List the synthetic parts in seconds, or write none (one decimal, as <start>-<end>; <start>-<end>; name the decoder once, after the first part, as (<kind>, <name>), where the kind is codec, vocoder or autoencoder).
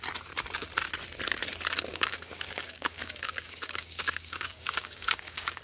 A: 1.9-5.6 (codec, DAC)